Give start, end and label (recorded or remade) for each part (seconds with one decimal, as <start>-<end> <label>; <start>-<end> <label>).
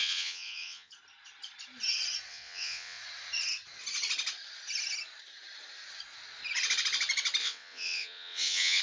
0.0-0.9 remade; 0.9-2.3 recorded; 2.3-3.0 remade; 3.0-7.4 recorded; 7.4-8.8 remade